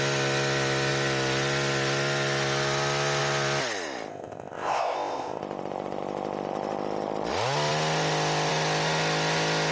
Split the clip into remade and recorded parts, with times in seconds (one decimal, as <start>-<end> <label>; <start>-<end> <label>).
0.0-4.1 recorded; 4.1-5.4 remade; 5.4-9.7 recorded